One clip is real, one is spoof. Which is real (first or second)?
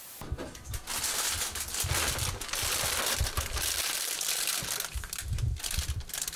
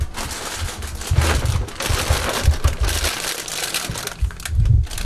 second